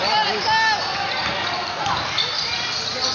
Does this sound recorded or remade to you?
recorded